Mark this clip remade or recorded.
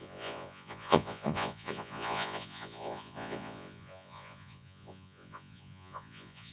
remade